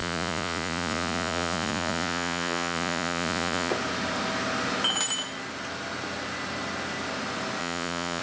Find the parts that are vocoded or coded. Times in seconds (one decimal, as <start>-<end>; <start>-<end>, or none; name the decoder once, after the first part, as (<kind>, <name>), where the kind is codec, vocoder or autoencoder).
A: 0.0-3.7 (vocoder, Vocos); 7.6-8.2